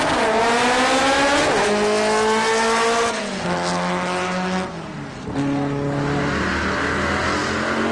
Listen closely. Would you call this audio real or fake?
real